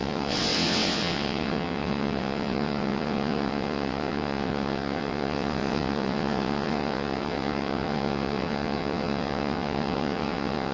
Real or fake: fake